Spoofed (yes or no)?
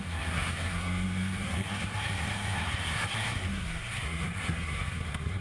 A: yes